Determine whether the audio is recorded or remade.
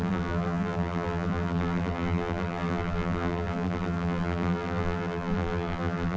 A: remade